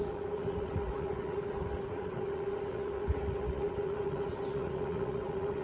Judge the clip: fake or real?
fake